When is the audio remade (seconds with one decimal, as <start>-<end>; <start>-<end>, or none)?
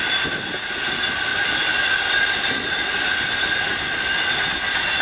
1.3-4.3